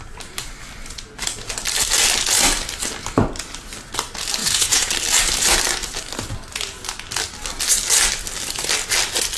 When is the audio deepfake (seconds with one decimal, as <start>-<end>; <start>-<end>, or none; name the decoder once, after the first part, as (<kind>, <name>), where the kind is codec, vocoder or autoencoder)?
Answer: 4.4-4.9 (vocoder, Vocos)